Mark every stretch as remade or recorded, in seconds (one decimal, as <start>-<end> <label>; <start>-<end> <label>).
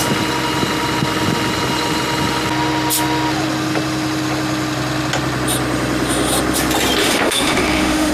0.0-7.0 recorded; 7.0-8.1 remade